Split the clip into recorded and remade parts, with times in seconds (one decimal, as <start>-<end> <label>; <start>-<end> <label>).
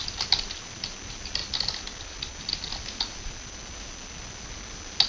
0.0-5.1 recorded